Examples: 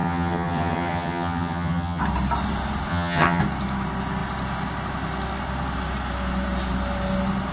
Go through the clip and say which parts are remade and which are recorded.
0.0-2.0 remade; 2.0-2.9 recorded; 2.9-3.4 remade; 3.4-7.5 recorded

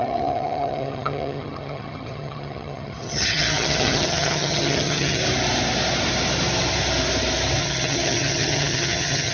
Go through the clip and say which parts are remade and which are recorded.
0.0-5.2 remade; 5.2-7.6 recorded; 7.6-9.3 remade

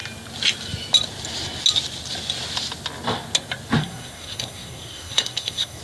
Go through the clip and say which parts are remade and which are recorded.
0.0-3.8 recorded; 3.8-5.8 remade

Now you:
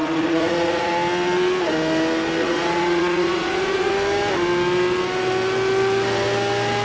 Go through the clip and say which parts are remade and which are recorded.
0.0-0.9 remade; 0.9-2.4 recorded; 2.4-3.9 remade; 3.9-6.8 recorded

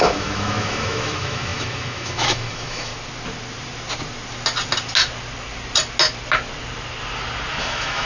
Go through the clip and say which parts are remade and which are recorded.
0.0-2.9 remade; 2.9-7.6 recorded; 7.6-8.1 remade

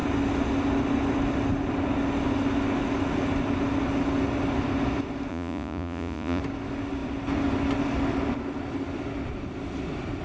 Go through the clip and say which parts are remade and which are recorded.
0.0-5.3 recorded; 5.3-6.4 remade; 6.4-10.2 recorded